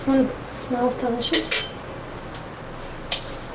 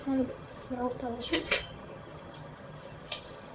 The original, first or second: first